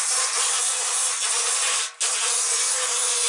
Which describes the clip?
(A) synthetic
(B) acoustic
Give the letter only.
B